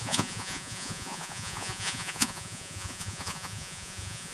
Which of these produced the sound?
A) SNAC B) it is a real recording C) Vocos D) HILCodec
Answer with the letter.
C